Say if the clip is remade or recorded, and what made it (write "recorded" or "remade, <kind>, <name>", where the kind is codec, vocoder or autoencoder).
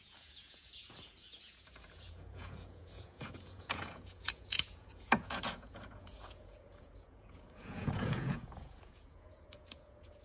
remade, vocoder, Vocos